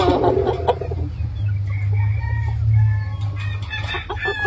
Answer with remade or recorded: recorded